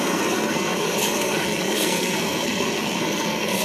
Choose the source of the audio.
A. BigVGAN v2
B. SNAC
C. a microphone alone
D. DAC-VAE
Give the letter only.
B